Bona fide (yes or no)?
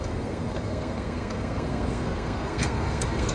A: no